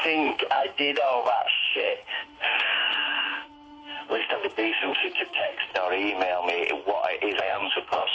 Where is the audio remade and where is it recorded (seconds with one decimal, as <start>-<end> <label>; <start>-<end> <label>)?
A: 0.0-5.7 remade; 5.7-7.4 recorded; 7.4-8.1 remade